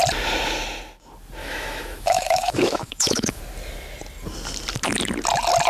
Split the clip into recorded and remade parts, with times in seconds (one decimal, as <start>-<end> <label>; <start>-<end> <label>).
0.0-1.4 recorded; 1.4-3.4 remade; 3.4-5.7 recorded